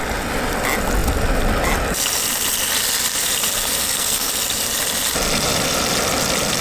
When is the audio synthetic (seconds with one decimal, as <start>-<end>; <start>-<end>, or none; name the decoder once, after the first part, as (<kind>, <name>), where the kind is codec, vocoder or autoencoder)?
3.8-4.3 (codec, SNAC)